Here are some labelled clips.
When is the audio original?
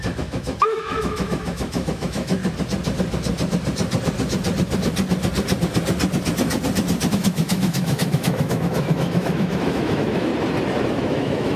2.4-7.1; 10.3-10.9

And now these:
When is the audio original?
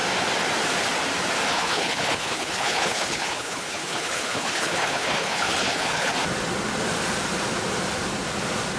0.0-1.5; 6.1-8.8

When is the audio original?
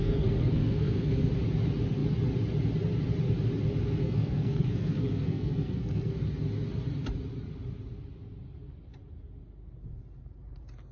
1.3-4.0; 6.2-10.9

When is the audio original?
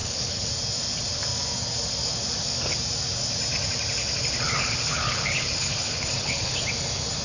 0.5-4.0; 6.6-7.2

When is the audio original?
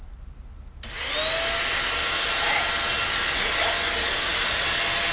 0.0-5.1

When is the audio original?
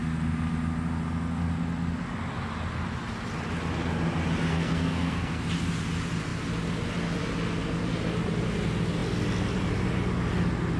0.0-4.5; 5.4-10.8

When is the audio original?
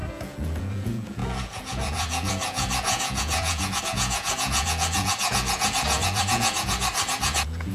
none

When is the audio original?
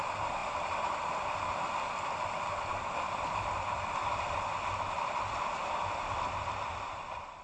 0.0-7.4